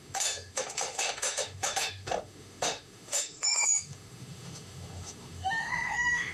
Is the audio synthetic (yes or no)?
yes